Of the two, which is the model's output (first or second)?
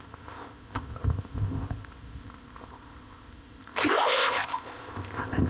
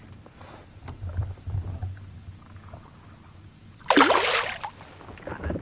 first